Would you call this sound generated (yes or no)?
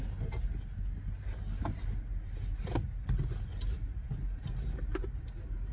no